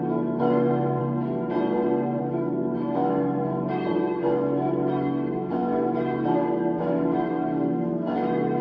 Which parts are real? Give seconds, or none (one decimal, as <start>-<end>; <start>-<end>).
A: 1.0-2.2